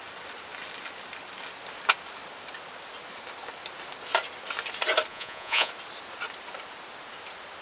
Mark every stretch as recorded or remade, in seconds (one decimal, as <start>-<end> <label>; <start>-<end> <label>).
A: 0.0-5.1 recorded; 5.1-5.7 remade; 5.7-7.6 recorded